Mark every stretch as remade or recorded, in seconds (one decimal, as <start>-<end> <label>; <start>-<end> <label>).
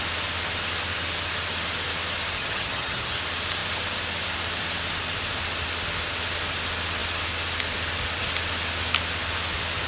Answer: 0.0-2.4 recorded; 2.4-3.2 remade; 3.2-9.9 recorded